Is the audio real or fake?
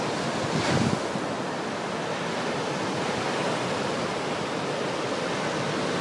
real